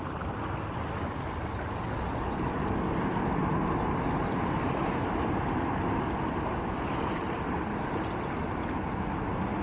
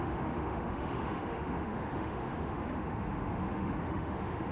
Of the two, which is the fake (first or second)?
second